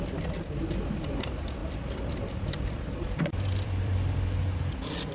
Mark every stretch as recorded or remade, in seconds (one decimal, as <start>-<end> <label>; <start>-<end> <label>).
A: 0.0-1.6 recorded; 1.6-5.1 remade